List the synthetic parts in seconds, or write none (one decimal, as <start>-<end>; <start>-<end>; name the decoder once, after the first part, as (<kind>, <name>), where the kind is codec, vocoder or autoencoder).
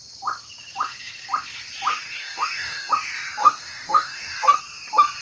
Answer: 1.9-2.9 (codec, DAC); 3.4-4.6